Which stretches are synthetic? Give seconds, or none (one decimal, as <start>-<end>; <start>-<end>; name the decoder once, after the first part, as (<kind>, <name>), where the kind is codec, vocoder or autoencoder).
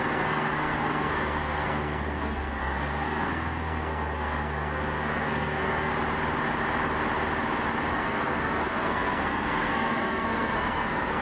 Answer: 0.0-5.9 (codec, SNAC); 7.9-11.2